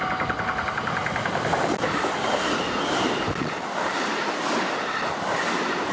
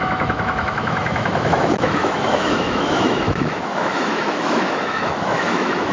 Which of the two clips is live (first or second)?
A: first